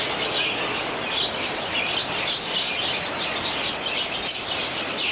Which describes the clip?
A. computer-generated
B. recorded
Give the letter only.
B